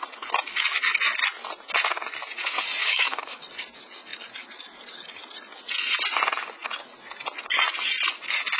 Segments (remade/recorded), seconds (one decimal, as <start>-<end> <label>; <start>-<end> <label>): 0.0-2.8 recorded; 2.8-3.4 remade; 3.4-8.6 recorded